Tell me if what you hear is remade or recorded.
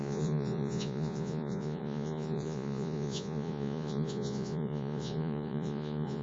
remade